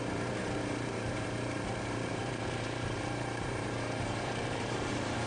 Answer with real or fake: fake